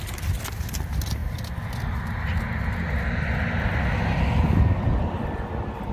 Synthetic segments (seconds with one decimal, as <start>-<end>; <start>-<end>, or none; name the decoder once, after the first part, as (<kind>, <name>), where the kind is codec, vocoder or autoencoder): none

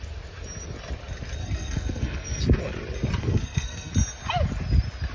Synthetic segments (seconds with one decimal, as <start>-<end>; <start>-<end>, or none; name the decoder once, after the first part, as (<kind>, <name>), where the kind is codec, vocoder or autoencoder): 1.4-2.4 (codec, SNAC); 3.2-3.9

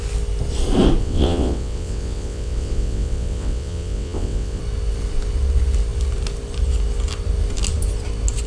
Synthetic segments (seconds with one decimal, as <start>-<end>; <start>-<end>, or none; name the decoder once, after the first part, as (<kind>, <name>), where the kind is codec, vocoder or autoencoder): 1.0-4.6 (vocoder, WaveNeXt)

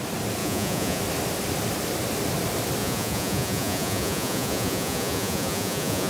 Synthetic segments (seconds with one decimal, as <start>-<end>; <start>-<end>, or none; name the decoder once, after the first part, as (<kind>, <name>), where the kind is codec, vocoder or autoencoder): 0.4-1.0 (vocoder, Vocos); 2.8-6.1

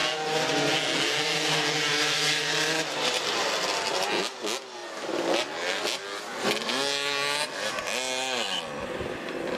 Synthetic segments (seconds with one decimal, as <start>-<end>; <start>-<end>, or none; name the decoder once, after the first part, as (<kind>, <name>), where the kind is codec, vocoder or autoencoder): none

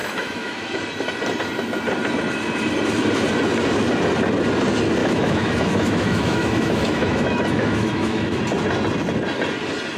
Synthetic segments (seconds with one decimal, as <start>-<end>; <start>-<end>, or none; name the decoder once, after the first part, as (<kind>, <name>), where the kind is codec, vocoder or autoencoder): 0.0-0.8 (autoencoder, DAC-VAE); 5.0-8.4

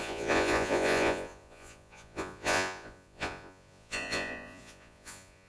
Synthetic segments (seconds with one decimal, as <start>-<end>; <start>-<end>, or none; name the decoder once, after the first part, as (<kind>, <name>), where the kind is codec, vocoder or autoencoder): 0.0-5.5 (vocoder, Vocos)